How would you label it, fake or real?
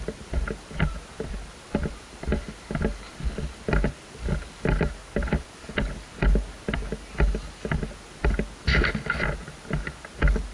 real